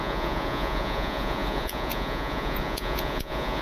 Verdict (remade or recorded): remade